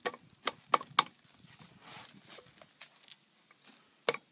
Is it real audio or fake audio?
real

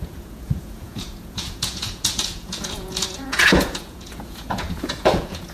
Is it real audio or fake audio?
fake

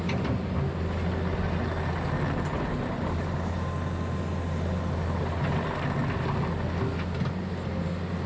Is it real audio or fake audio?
real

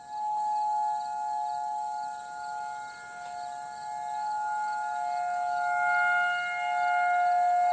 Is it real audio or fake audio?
real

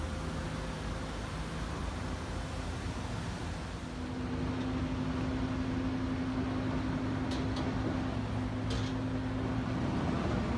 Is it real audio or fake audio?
real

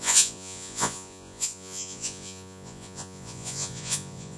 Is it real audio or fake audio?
fake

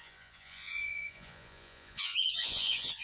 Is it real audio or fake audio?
fake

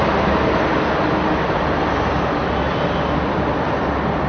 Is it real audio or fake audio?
real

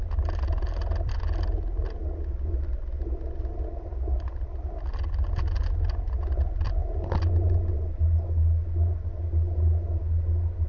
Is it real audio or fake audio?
real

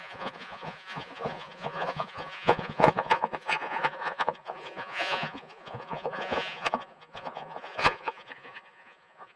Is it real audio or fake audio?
fake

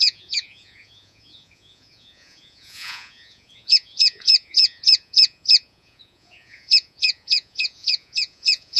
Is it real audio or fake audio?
fake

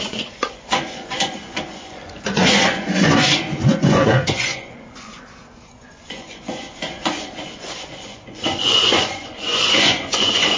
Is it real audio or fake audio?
fake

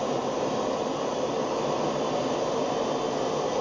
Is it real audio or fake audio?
real